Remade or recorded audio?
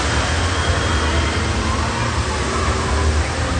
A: recorded